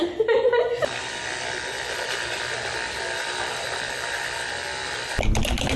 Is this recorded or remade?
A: remade